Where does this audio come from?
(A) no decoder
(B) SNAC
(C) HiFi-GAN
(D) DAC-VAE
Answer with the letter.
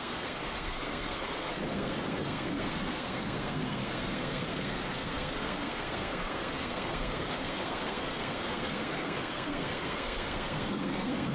B